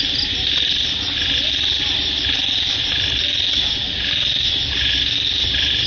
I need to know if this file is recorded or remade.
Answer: recorded